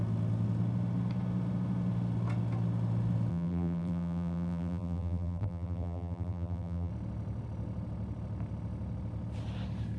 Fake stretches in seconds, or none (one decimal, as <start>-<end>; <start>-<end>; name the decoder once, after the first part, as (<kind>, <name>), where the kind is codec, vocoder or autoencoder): 3.3-6.9 (vocoder, BigVGAN v2)